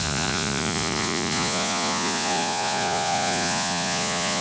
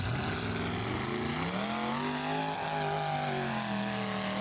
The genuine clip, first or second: second